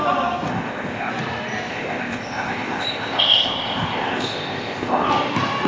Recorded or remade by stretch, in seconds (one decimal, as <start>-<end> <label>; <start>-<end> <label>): 0.0-0.5 recorded; 0.5-1.1 remade; 1.1-1.7 recorded; 1.7-5.1 remade; 5.1-5.7 recorded